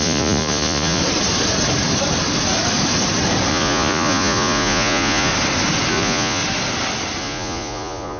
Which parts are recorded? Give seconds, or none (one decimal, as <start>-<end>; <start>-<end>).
1.0-3.5; 5.3-5.9; 6.4-7.2